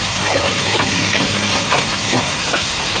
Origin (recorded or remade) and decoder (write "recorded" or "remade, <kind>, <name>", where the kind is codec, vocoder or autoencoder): remade, codec, SNAC